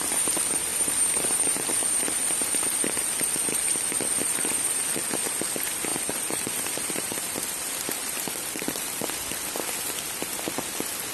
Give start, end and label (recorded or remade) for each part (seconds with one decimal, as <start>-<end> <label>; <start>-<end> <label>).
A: 0.0-1.8 recorded; 1.8-4.5 remade; 4.5-5.9 recorded; 5.9-9.5 remade; 9.5-11.1 recorded